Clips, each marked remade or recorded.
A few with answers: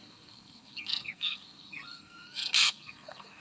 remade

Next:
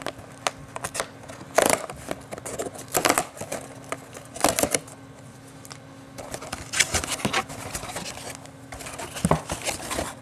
recorded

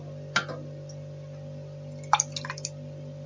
recorded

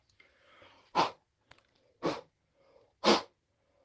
recorded